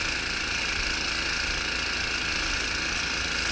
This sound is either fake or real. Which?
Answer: real